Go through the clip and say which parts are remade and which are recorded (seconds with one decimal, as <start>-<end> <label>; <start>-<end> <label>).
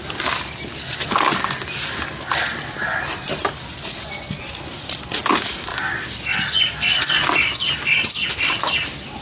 0.0-9.2 recorded